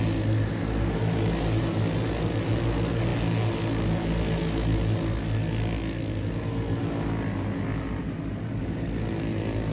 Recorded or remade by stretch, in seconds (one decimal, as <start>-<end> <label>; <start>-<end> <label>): 0.0-9.7 recorded